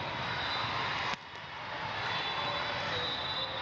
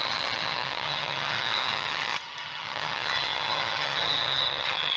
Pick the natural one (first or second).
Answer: first